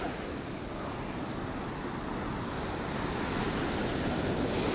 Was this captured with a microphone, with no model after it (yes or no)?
yes